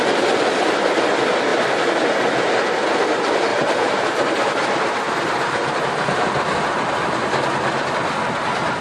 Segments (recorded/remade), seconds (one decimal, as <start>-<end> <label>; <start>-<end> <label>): 0.0-3.5 recorded; 3.5-6.9 remade; 6.9-8.8 recorded